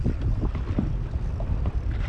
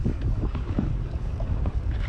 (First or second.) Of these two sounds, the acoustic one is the first